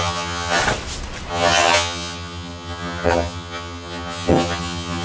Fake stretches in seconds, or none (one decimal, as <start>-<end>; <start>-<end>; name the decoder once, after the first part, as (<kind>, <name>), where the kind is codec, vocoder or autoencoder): 0.0-0.6 (vocoder, HiFi-GAN); 1.3-5.0